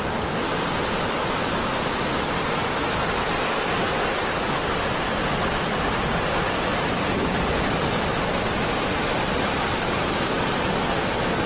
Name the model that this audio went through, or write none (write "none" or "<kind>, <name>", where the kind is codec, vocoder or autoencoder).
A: none